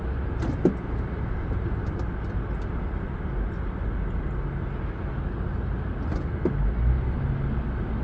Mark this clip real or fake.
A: real